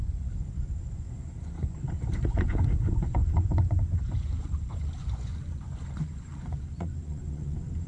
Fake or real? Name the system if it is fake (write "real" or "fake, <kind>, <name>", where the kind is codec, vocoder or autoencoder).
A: fake, vocoder, Vocos